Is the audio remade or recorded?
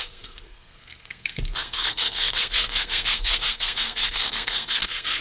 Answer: remade